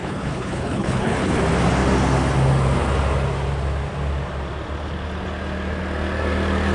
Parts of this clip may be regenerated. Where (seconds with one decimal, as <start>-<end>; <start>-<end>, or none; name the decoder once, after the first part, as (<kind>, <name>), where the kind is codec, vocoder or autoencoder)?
0.0-1.4 (codec, HILCodec)